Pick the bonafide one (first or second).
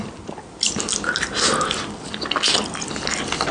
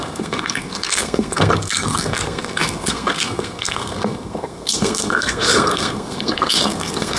first